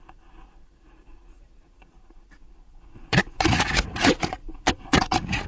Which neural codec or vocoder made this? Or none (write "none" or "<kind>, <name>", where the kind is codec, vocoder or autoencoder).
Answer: vocoder, Vocos